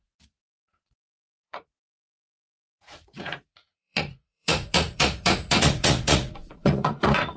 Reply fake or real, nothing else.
fake